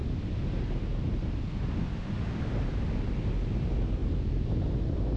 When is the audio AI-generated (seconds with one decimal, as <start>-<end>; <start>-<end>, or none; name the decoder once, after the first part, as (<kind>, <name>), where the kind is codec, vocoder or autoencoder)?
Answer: 4.0-4.7 (vocoder, BigVGAN v2)